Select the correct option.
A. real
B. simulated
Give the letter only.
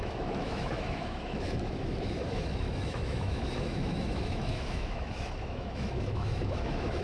B